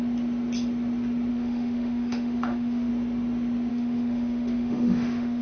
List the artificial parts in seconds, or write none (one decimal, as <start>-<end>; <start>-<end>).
1.3-2.9; 3.7-5.4